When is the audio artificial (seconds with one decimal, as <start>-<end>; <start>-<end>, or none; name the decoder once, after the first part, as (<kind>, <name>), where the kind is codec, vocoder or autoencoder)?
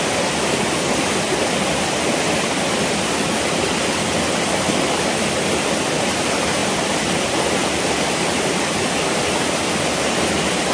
none